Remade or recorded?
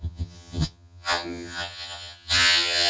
remade